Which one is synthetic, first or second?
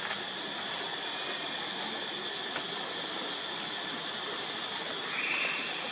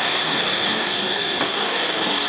second